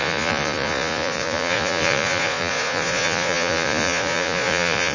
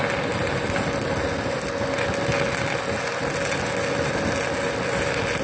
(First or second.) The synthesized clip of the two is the first